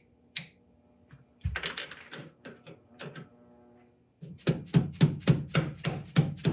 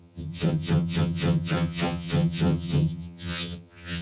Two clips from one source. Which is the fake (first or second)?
second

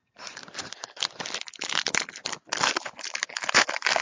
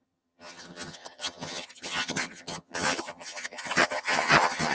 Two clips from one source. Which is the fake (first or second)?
second